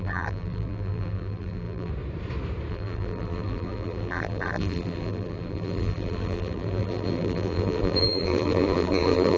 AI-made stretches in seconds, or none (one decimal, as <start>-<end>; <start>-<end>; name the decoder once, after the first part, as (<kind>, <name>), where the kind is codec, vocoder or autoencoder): 0.0-1.9 (vocoder, BigVGAN v2); 2.7-9.4